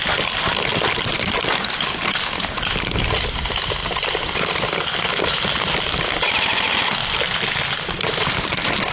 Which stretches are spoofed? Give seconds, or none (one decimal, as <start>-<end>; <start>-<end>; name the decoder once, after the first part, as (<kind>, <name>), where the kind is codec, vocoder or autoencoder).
0.7-3.4 (vocoder, BigVGAN v2); 3.8-4.5; 7.0-7.6